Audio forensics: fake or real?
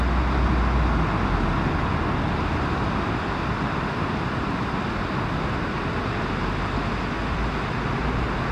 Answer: real